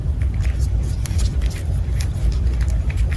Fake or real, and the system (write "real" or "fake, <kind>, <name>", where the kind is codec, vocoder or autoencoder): real